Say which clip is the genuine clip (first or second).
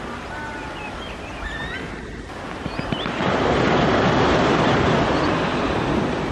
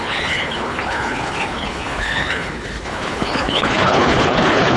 first